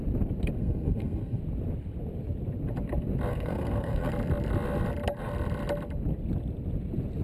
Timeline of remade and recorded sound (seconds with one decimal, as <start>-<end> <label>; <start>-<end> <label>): 0.0-0.6 recorded; 0.6-1.4 remade; 1.4-3.3 recorded; 3.3-4.1 remade; 4.1-7.2 recorded

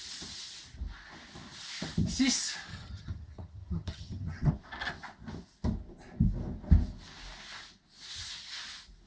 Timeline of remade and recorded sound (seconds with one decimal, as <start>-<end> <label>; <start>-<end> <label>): 0.0-2.7 recorded; 2.7-4.5 remade; 4.5-9.1 recorded

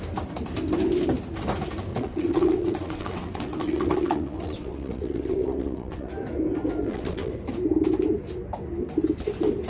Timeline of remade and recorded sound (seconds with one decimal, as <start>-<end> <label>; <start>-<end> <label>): 0.0-1.9 recorded; 1.9-6.1 remade; 6.1-6.8 recorded; 6.8-7.3 remade; 7.3-9.7 recorded

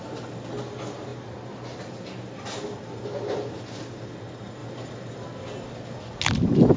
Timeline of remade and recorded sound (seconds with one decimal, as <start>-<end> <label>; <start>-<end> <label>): 0.0-6.8 recorded

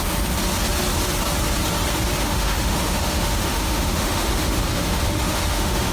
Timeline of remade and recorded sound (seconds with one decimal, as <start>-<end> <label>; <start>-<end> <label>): 0.0-2.2 recorded; 2.2-5.9 remade

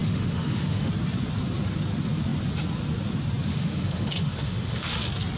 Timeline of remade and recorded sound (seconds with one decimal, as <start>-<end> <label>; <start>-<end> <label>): 0.0-0.9 remade; 0.9-3.5 recorded; 3.5-4.9 remade; 4.9-5.4 recorded

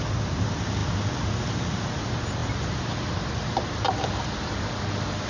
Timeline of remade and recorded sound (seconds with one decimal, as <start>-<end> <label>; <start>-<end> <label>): 0.0-5.3 recorded

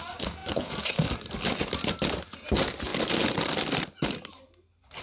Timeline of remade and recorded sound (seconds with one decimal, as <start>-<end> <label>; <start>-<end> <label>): 0.0-5.0 recorded